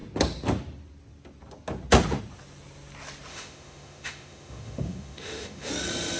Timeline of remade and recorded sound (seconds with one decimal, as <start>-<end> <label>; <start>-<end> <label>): 0.0-3.3 recorded; 3.3-5.7 remade; 5.7-6.2 recorded